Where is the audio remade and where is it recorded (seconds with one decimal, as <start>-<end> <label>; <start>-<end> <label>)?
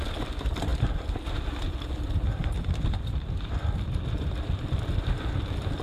0.0-5.8 recorded